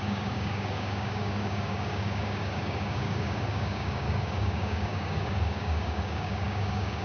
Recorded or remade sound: remade